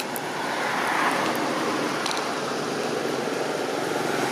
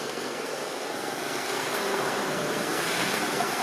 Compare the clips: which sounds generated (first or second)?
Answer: second